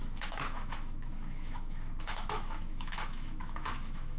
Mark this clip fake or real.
fake